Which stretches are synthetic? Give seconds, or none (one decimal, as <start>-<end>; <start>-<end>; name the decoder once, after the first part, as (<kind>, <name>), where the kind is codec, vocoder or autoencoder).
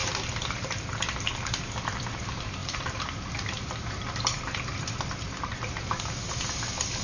0.0-1.0 (vocoder, BigVGAN v2); 2.6-5.9